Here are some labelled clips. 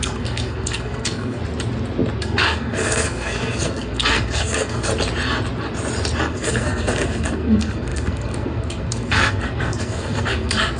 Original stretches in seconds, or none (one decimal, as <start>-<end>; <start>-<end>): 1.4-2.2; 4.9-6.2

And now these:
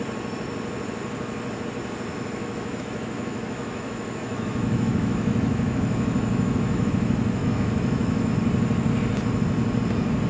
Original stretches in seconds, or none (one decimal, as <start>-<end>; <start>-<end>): 0.0-2.1; 6.9-7.4; 8.3-10.3

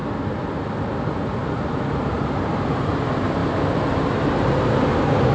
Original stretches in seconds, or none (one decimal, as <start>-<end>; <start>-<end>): 0.0-1.4; 2.5-5.3